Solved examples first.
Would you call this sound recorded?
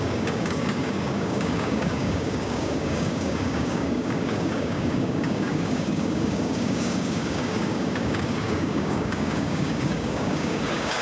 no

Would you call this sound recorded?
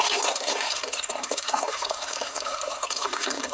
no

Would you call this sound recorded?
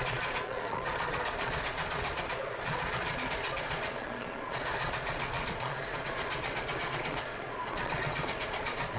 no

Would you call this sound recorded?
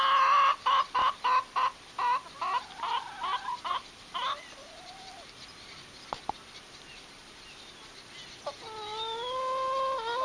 yes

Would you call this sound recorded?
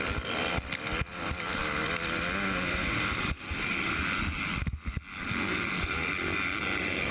yes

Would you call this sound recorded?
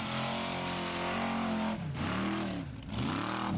yes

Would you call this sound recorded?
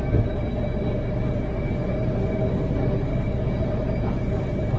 yes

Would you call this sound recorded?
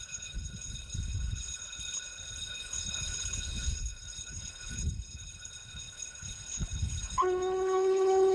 no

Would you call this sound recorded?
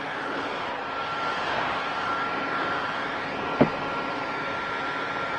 yes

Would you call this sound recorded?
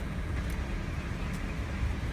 yes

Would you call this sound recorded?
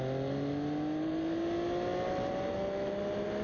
yes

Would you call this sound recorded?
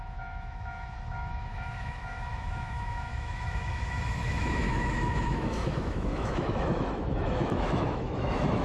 no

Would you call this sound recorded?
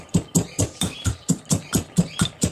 yes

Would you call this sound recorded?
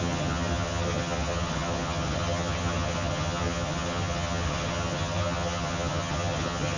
no